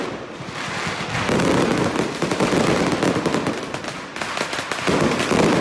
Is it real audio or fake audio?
real